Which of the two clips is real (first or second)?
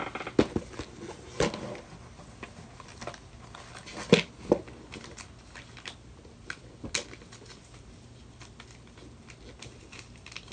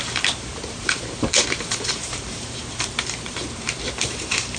first